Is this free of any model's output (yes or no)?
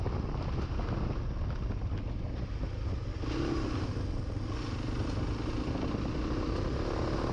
yes